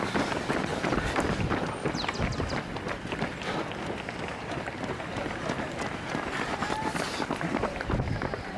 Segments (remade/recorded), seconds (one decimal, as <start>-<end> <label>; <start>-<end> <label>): 0.0-0.7 remade; 0.7-4.4 recorded; 4.4-8.6 remade